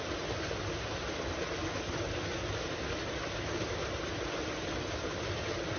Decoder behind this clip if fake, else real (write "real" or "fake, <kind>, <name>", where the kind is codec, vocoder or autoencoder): real